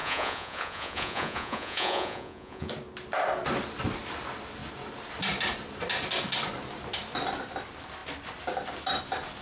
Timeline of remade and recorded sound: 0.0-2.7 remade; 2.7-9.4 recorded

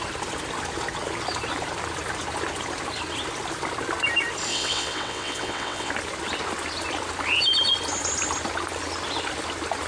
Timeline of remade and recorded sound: 0.0-4.5 recorded; 4.5-5.9 remade; 5.9-9.9 recorded

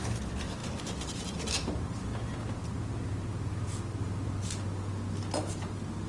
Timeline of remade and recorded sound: 0.0-2.1 remade; 2.1-6.1 recorded